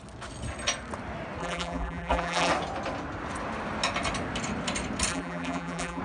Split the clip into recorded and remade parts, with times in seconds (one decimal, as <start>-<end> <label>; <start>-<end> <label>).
0.0-1.4 recorded; 1.4-2.5 remade; 2.5-5.1 recorded; 5.1-6.0 remade